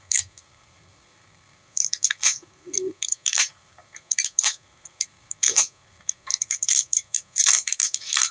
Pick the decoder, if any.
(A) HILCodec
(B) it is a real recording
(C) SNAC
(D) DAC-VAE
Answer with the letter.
C